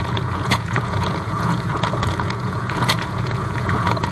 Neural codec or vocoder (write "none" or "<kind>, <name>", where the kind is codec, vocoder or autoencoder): vocoder, Vocos